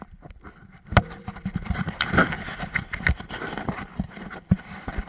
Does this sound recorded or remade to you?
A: remade